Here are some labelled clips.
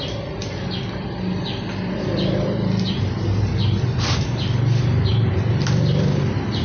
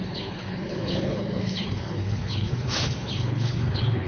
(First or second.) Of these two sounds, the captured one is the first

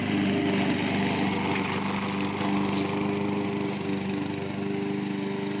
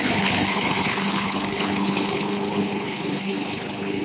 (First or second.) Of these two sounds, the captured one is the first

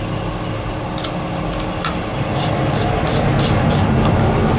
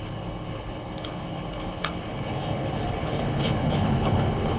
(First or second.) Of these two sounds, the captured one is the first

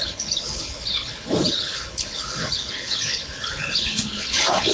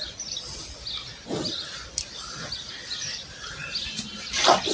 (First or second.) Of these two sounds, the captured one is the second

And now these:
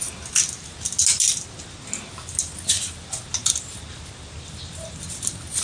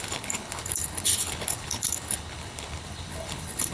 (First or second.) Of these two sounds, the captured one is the first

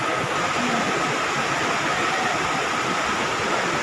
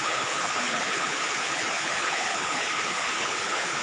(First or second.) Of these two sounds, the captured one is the first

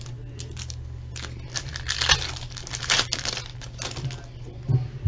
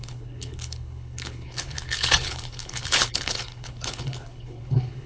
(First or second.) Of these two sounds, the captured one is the first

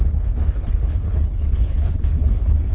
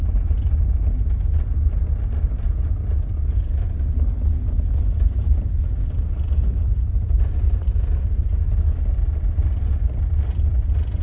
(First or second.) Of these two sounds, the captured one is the second